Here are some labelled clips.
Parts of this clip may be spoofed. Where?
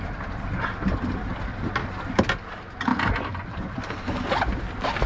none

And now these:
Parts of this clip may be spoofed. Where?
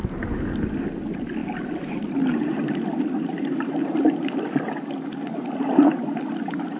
none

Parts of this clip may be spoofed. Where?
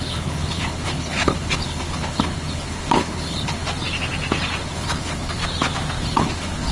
0.0-3.6 (codec, HILCodec); 4.6-5.4; 6.0-6.7